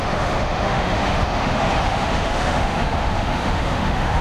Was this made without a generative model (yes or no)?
no